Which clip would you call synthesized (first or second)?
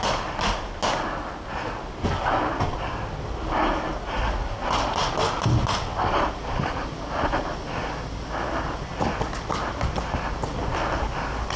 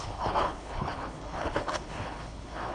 second